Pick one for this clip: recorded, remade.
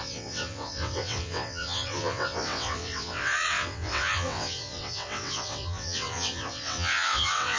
remade